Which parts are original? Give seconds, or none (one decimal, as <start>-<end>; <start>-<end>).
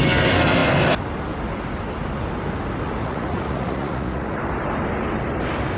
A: 0.0-3.0; 4.4-5.8